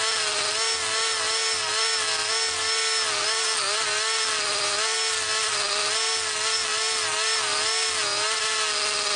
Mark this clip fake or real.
real